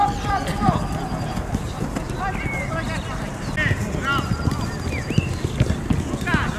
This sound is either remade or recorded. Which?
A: recorded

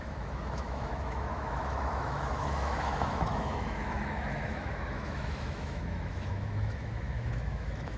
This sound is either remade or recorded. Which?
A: remade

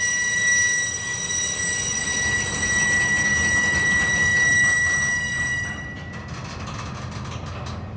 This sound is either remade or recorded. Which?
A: recorded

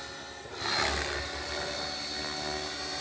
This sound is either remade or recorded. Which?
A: recorded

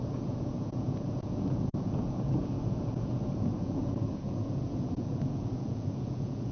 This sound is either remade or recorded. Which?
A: remade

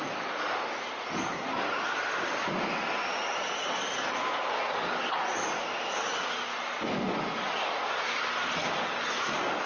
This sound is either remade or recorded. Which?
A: recorded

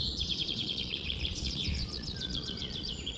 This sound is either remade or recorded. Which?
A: remade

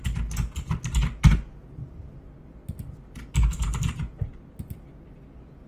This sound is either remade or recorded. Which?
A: recorded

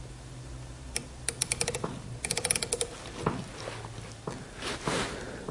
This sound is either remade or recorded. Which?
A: recorded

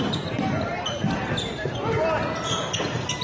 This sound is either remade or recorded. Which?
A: recorded